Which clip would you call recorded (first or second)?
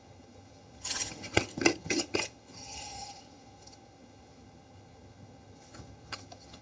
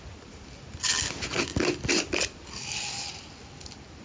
second